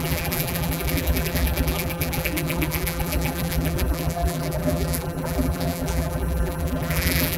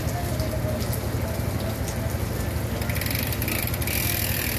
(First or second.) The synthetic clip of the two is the first